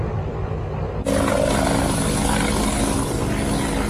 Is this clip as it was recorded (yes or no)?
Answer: yes